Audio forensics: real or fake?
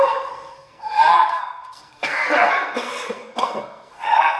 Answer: fake